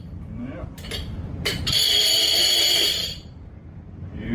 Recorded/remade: remade